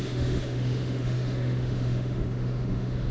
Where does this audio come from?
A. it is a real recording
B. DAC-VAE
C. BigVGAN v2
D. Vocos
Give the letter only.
B